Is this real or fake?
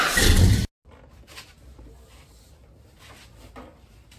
real